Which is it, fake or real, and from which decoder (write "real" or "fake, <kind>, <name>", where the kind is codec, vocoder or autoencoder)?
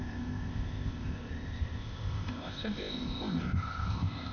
fake, codec, ZipCodec